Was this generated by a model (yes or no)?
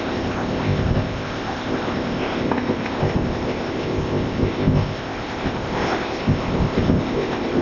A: yes